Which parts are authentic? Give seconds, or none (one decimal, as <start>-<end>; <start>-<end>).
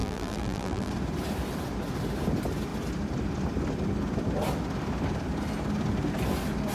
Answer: 0.9-6.7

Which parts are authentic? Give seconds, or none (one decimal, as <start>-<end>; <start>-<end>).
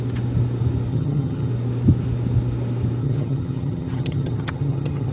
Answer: 0.0-0.9; 1.5-3.0